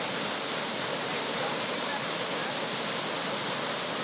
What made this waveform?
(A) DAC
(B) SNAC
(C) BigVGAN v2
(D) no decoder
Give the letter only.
D